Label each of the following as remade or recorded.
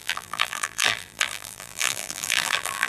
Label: remade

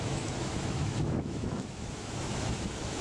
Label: remade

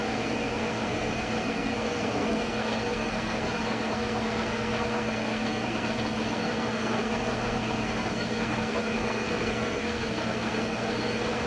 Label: remade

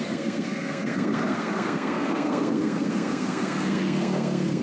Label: remade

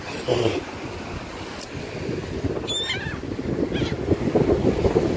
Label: recorded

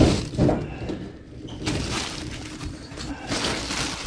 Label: recorded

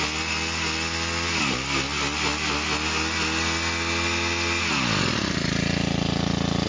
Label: recorded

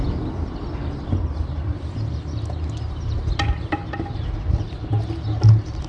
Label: recorded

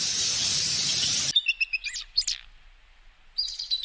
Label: recorded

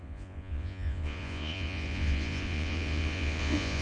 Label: remade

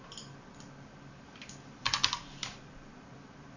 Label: remade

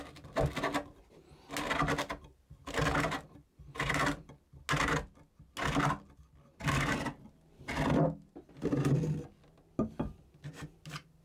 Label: recorded